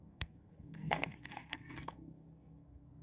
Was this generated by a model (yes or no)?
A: yes